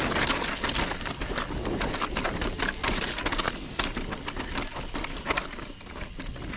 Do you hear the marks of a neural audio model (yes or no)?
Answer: no